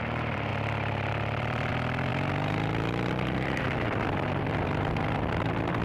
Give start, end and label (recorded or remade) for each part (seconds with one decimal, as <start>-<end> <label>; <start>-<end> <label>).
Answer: 0.0-5.8 remade